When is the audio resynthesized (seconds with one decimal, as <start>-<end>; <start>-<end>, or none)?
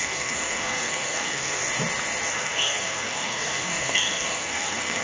0.0-1.6; 2.3-5.0